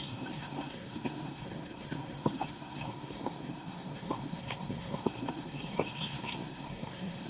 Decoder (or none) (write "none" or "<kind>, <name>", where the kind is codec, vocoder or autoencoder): codec, SNAC